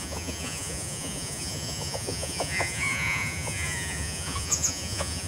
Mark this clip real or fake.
fake